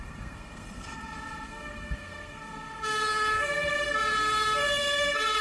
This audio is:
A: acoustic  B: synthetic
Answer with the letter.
B